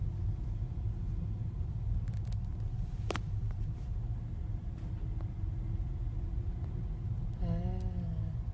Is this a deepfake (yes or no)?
no